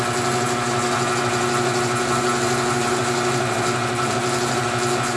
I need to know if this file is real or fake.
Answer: real